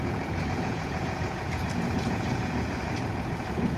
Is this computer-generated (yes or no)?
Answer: yes